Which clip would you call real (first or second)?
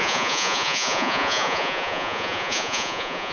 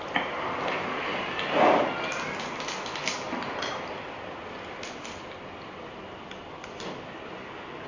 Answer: second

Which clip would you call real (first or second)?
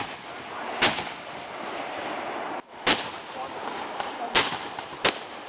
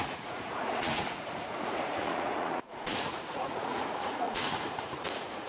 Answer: first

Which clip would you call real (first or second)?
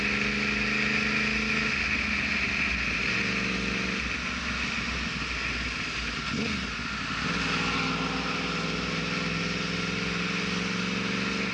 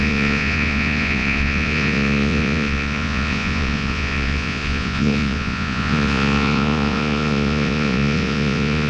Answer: first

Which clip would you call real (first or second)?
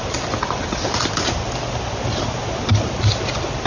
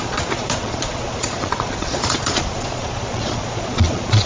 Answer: first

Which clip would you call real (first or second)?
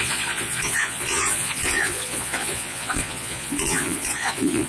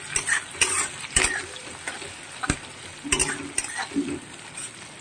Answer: second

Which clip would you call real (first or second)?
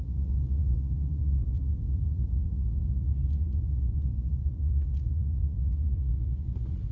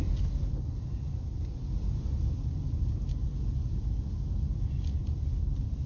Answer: second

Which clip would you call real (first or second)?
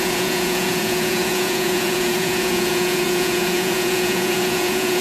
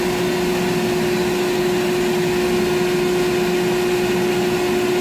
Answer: second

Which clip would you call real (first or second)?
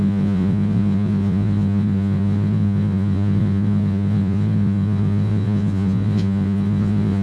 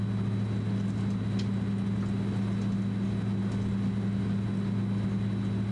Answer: second